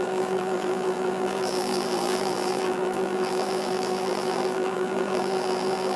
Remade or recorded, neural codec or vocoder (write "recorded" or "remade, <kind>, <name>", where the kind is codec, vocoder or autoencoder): remade, vocoder, BigVGAN v2